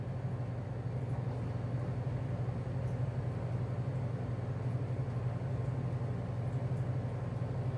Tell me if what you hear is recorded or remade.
recorded